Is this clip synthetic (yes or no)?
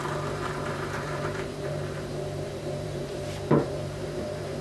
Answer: yes